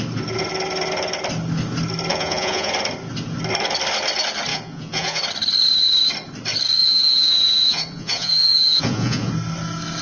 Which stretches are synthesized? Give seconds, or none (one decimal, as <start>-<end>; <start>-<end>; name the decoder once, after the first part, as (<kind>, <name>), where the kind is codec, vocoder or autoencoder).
2.1-2.7 (vocoder, Vocos); 4.5-5.2; 6.8-9.3